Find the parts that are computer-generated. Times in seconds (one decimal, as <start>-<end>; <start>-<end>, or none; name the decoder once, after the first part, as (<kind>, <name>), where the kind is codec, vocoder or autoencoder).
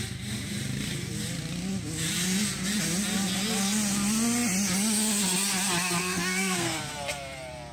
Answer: 6.0-6.8 (codec, SNAC)